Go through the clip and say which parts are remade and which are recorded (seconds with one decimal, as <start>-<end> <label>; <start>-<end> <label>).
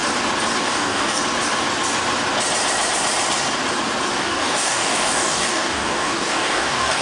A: 0.0-0.6 recorded; 0.6-1.2 remade; 1.2-4.2 recorded; 4.2-7.0 remade